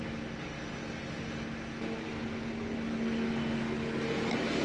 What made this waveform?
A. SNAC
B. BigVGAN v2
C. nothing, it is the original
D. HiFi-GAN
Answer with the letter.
C